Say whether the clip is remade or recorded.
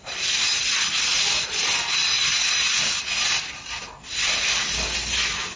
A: recorded